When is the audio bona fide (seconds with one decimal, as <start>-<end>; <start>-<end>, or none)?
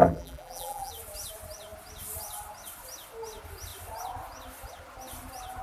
0.9-5.6